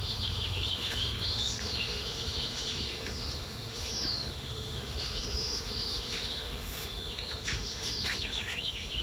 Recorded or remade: remade